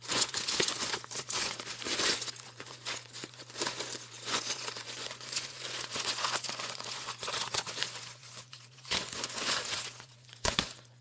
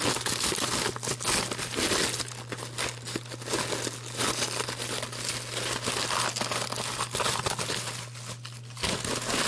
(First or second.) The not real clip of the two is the first